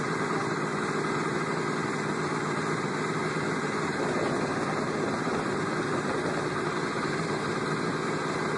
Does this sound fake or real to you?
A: fake